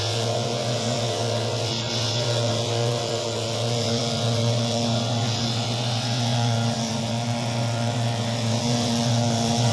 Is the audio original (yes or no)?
no